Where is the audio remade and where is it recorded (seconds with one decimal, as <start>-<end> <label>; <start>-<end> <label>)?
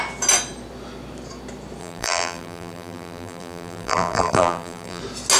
0.0-1.8 recorded; 1.8-5.0 remade; 5.0-5.4 recorded